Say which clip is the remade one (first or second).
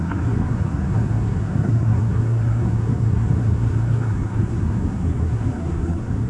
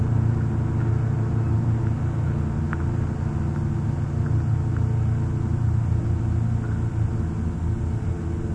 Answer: first